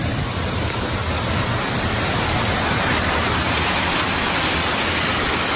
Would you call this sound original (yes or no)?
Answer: yes